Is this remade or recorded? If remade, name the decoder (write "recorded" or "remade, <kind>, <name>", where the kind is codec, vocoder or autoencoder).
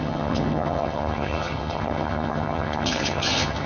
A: remade, vocoder, HiFi-GAN